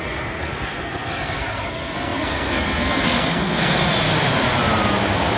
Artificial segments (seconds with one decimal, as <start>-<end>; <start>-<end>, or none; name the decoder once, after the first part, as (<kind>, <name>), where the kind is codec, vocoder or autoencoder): 0.0-3.8 (codec, SNAC)